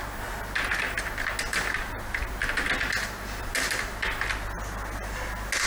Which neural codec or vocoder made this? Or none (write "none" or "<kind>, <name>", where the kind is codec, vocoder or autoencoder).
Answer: none